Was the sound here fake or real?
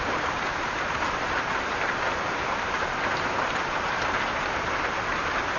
fake